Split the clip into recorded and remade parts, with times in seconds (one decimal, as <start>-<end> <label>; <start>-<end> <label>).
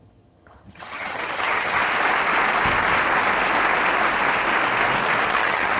0.0-1.8 remade; 1.8-5.3 recorded; 5.3-5.8 remade